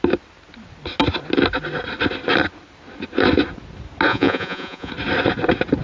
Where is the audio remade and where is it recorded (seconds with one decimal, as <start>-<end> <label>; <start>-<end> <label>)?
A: 0.0-4.1 recorded; 4.1-4.9 remade; 4.9-5.8 recorded